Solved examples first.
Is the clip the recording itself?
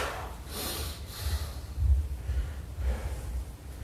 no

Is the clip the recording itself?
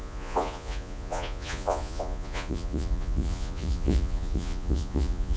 no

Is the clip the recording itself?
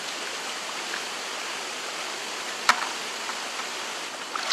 yes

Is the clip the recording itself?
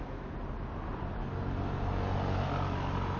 yes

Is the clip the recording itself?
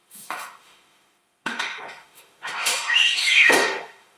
no